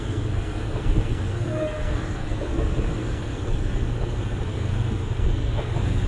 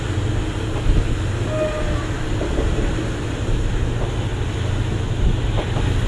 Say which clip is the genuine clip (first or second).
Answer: second